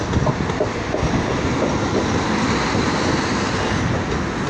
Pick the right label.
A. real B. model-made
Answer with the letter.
A